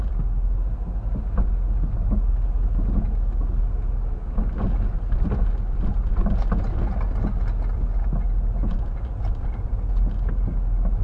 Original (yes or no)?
yes